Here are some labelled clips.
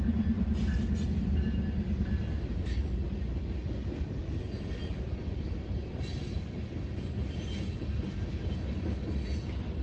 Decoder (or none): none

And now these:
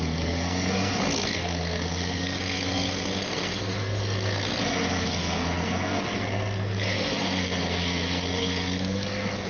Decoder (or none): codec, SNAC